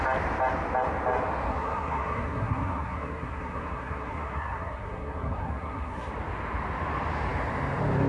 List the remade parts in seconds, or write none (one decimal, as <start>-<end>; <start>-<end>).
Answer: 1.5-6.1